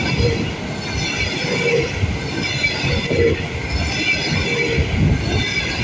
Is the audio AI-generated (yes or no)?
no